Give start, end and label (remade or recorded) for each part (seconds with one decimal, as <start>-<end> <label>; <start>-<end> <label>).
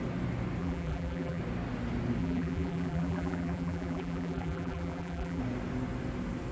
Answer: 0.0-0.6 recorded; 0.6-1.4 remade; 1.4-2.2 recorded; 2.2-5.4 remade; 5.4-6.5 recorded